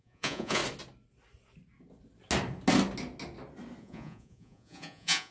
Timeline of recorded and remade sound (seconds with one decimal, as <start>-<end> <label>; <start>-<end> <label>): 0.0-0.6 remade; 0.6-3.8 recorded; 3.8-5.3 remade

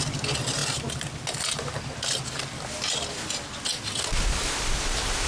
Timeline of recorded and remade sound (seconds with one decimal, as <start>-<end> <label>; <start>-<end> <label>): 0.0-5.3 recorded

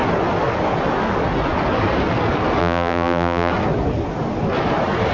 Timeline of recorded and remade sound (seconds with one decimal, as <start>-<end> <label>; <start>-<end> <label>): 0.0-2.6 recorded; 2.6-3.5 remade; 3.5-5.1 recorded

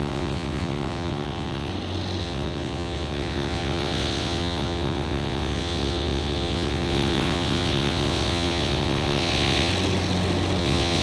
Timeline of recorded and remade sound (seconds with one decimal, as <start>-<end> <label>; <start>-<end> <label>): 0.0-1.7 remade; 1.7-2.2 recorded; 2.2-9.7 remade; 9.7-10.6 recorded; 10.6-11.0 remade

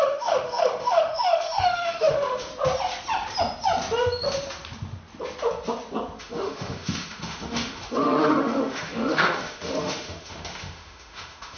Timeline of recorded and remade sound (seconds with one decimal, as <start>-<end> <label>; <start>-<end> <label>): 0.0-2.5 remade; 2.5-6.2 recorded; 6.2-11.6 remade

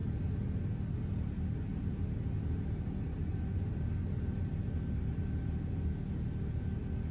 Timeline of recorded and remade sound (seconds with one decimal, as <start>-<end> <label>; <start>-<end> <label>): 0.0-7.1 recorded

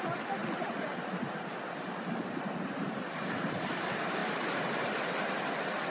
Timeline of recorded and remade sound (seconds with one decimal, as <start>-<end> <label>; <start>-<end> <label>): 0.0-5.9 recorded

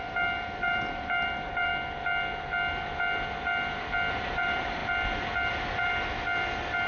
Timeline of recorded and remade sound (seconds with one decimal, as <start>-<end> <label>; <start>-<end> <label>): 0.0-1.7 remade; 1.7-4.1 recorded; 4.1-4.8 remade; 4.8-5.5 recorded; 5.5-5.9 remade; 5.9-6.9 recorded